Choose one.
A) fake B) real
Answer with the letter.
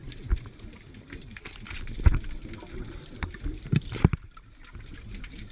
B